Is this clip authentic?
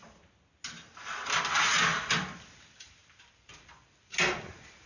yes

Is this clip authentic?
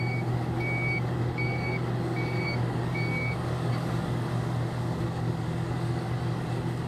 no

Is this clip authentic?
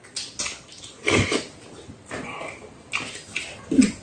yes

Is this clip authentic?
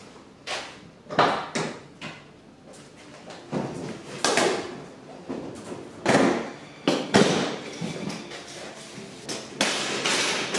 yes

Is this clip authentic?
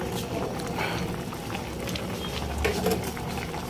yes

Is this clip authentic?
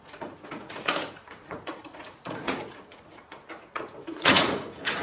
no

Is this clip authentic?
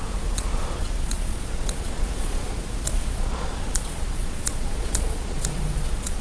no